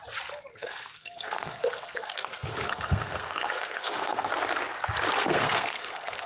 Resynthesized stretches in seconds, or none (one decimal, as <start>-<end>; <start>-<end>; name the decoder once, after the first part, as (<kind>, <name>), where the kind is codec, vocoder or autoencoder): 0.5-4.3 (codec, SNAC); 5.1-6.3